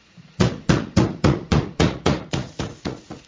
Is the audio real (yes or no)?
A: no